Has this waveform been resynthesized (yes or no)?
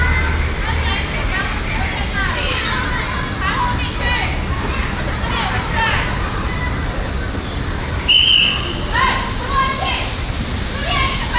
no